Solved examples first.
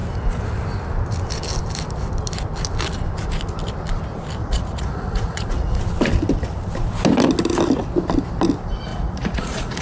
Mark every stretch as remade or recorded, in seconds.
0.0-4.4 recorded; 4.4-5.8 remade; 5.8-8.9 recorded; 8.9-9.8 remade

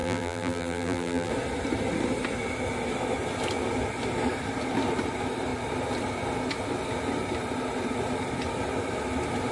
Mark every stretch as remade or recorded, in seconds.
0.0-1.3 remade; 1.3-9.5 recorded

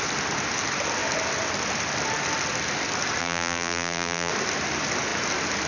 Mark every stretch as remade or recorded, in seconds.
0.0-3.2 recorded; 3.2-4.3 remade; 4.3-5.7 recorded

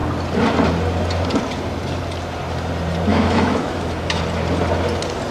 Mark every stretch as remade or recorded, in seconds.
0.0-3.1 recorded; 3.1-4.2 remade; 4.2-5.3 recorded

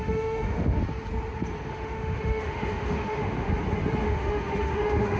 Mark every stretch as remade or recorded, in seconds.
0.0-0.8 remade; 0.8-1.7 recorded; 1.7-3.5 remade; 3.5-4.0 recorded; 4.0-5.2 remade